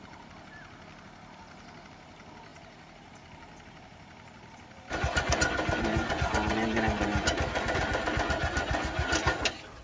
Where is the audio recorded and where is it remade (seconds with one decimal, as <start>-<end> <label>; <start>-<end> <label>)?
0.0-9.8 recorded